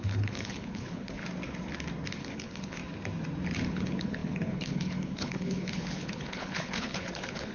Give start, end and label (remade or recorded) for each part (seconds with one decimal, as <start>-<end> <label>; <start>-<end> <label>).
0.0-1.2 remade; 1.2-2.2 recorded; 2.2-2.8 remade; 2.8-3.7 recorded; 3.7-7.5 remade